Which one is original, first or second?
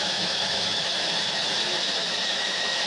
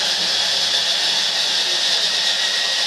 second